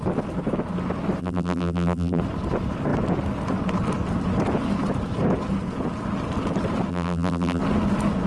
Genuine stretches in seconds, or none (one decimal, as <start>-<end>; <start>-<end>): 0.0-1.2; 2.2-6.9; 7.6-8.3